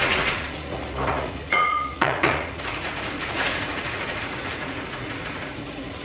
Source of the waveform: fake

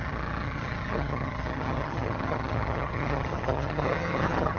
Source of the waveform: fake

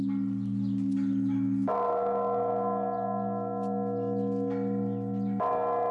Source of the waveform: real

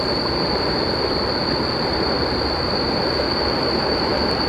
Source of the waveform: fake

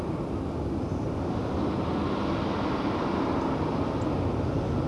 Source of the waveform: real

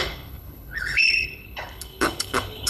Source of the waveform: fake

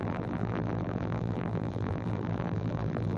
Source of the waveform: fake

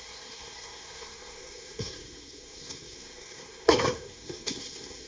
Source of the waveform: fake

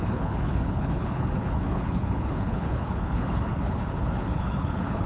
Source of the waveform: fake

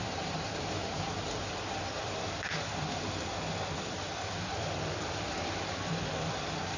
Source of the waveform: fake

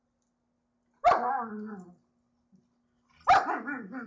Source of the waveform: real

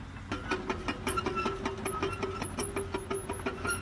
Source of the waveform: real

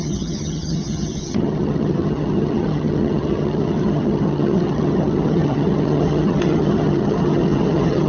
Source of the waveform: fake